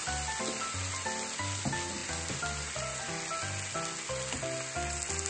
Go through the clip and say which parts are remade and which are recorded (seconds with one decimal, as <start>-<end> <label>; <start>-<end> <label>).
0.0-5.3 recorded